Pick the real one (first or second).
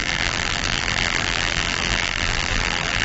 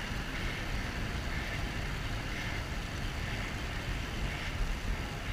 second